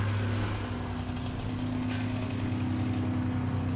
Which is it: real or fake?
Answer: real